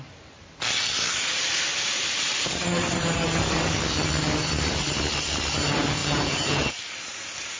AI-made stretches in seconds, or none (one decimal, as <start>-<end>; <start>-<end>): 0.8-3.8; 4.4-5.0